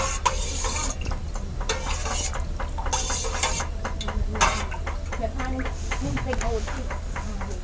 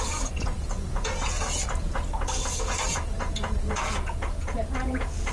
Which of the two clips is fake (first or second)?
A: second